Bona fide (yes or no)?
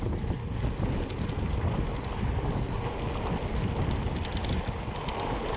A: yes